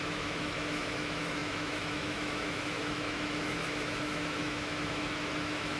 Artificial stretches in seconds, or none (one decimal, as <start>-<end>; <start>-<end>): 0.0-5.8